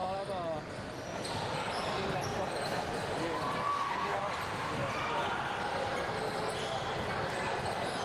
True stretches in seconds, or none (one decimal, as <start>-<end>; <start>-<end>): 0.0-3.6; 4.2-8.0